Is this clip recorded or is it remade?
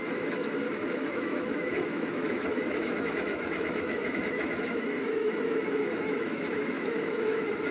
remade